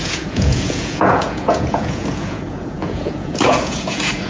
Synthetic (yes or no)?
yes